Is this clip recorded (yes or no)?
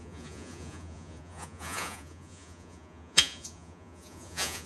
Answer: no